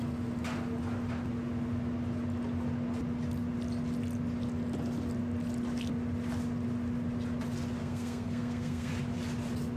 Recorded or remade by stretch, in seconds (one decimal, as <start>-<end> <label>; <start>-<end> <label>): 0.0-7.8 recorded; 7.8-8.9 remade; 8.9-9.8 recorded